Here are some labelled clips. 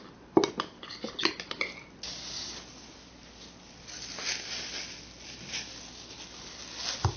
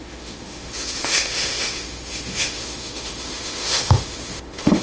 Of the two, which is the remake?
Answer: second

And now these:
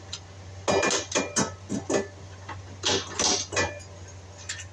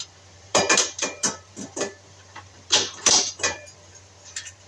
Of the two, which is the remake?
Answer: second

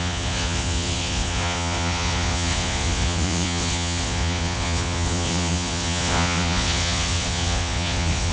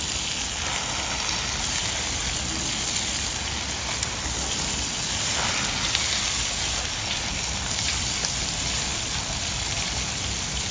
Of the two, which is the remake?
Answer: first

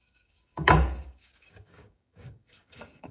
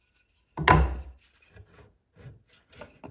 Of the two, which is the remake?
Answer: first